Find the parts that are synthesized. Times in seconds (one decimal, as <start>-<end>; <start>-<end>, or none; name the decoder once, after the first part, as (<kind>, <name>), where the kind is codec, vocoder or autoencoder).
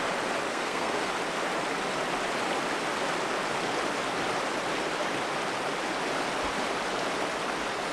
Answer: 0.5-1.1 (codec, SNAC)